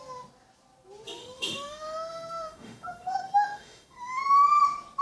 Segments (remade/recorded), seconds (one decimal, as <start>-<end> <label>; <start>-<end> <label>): 0.0-1.2 recorded; 1.2-4.2 remade; 4.2-5.0 recorded